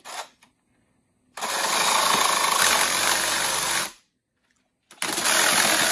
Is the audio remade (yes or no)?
no